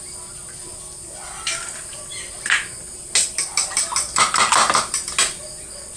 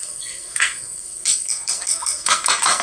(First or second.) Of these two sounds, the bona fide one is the first